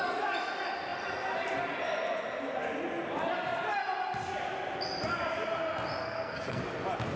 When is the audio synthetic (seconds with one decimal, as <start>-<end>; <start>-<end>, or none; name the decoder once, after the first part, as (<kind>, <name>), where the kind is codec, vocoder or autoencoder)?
6.0-6.6 (codec, SNAC)